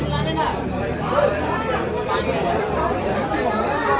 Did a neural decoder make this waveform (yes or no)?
no